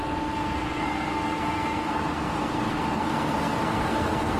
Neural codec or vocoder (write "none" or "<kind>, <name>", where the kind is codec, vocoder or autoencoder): codec, SNAC